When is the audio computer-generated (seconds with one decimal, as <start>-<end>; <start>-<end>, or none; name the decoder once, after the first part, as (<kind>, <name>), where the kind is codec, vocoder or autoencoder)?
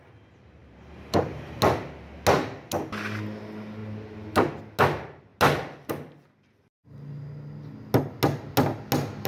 0.6-1.5 (vocoder, BigVGAN v2)